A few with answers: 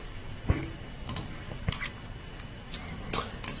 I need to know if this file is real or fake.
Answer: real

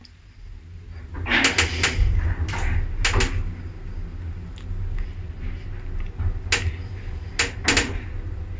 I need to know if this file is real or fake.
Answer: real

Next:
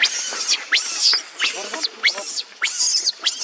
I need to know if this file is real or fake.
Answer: real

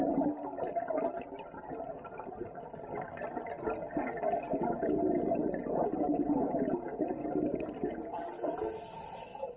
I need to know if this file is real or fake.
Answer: real